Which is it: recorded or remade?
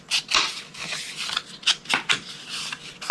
recorded